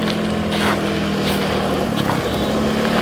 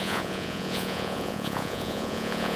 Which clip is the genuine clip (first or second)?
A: first